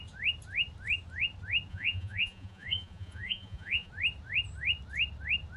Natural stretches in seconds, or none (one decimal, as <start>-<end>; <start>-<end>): 0.0-1.7; 3.9-5.6